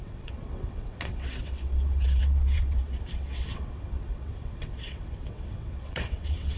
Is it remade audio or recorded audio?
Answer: remade